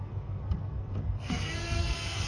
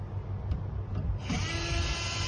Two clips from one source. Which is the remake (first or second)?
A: first